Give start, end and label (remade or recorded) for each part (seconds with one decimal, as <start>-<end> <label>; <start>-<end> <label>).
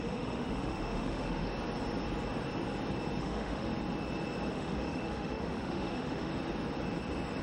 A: 0.0-1.5 remade; 1.5-3.2 recorded; 3.2-3.7 remade; 3.7-4.5 recorded; 4.5-6.3 remade; 6.3-7.4 recorded